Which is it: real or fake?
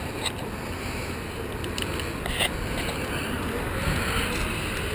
real